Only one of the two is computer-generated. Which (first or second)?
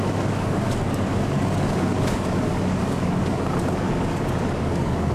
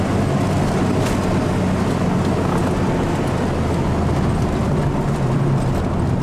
first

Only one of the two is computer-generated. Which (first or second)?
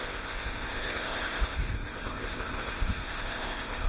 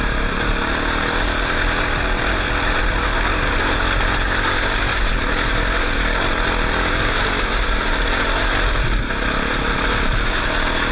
first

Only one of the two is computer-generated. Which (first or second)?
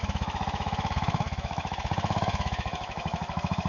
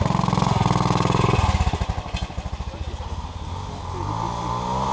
first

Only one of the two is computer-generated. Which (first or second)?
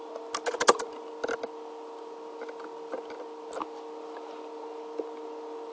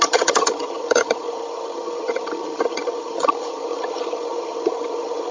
second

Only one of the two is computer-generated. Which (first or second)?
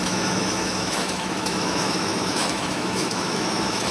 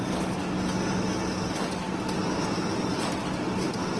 first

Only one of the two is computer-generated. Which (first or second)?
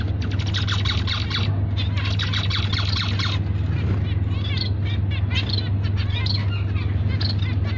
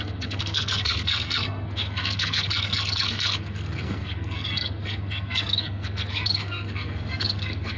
second